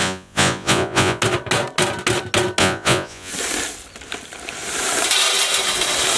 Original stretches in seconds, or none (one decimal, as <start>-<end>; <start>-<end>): 1.2-2.6; 3.3-6.2